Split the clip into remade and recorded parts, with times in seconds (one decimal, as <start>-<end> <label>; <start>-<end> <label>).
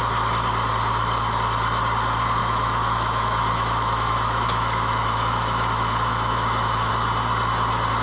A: 0.0-2.4 recorded; 2.4-6.9 remade; 6.9-8.0 recorded